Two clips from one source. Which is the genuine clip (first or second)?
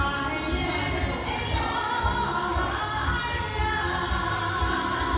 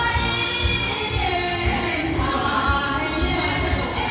first